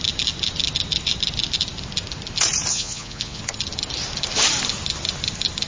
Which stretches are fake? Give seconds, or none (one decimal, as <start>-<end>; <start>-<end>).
2.7-3.4